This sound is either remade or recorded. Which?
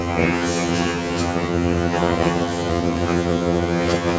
remade